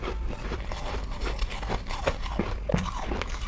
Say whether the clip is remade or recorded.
recorded